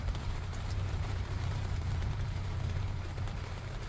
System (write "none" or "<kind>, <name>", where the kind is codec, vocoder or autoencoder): vocoder, BigVGAN v2